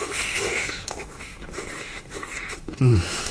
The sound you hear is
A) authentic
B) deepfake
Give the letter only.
B